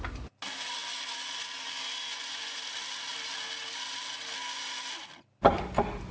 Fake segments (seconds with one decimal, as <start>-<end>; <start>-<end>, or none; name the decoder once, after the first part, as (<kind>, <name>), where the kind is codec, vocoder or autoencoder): 2.1-2.6 (vocoder, Vocos)